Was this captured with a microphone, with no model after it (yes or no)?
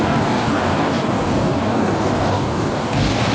no